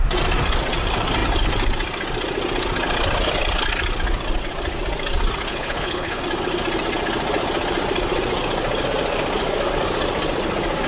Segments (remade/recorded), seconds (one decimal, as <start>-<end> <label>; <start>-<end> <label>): 0.0-5.5 recorded; 5.5-6.2 remade; 6.2-10.9 recorded